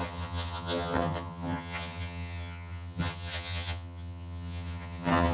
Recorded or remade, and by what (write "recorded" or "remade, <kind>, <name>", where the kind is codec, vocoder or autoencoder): remade, vocoder, HiFi-GAN